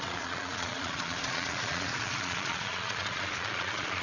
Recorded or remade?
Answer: remade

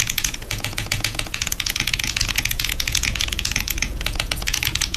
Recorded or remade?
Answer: remade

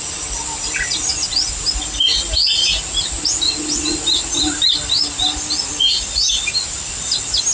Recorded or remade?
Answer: recorded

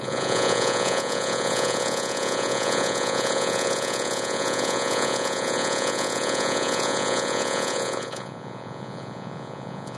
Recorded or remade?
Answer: remade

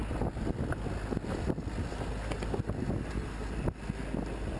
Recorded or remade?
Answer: recorded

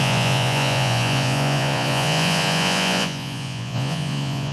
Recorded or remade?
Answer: remade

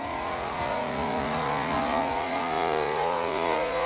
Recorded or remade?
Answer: remade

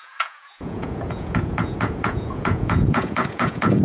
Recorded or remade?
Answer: remade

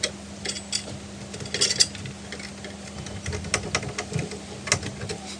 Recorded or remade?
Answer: recorded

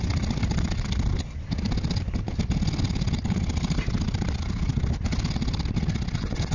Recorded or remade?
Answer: recorded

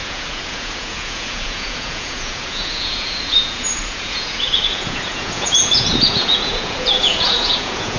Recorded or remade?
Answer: remade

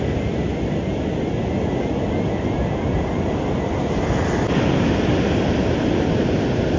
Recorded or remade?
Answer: recorded